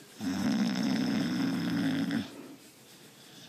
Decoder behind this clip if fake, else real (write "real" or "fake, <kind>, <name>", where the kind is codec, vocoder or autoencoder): fake, vocoder, BigVGAN v2